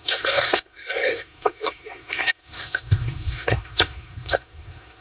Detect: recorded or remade remade